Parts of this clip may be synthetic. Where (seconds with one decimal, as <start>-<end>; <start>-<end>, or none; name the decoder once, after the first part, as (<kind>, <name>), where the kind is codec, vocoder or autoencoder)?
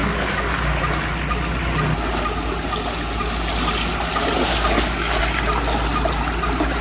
0.0-0.8 (codec, DAC); 4.5-5.2